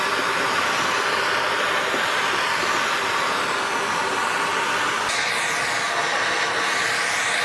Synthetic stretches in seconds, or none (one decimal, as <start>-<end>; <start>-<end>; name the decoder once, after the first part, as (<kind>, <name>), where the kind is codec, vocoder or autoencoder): none